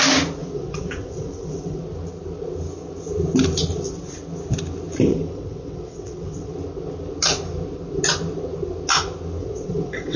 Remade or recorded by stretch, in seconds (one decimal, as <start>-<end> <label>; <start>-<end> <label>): 0.0-0.4 recorded; 0.4-1.8 remade; 1.8-5.1 recorded; 5.1-6.5 remade; 6.5-9.4 recorded; 9.4-10.2 remade